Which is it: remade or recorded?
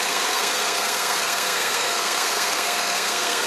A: remade